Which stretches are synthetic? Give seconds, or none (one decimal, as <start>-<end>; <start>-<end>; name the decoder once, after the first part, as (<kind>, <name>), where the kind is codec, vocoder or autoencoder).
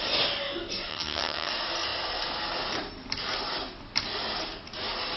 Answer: 0.9-1.5 (vocoder, HiFi-GAN)